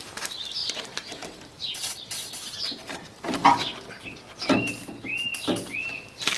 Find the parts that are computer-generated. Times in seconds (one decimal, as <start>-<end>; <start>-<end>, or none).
0.6-2.3; 2.8-4.7; 5.3-6.4